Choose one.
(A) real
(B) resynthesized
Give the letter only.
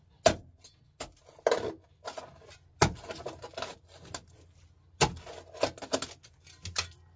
A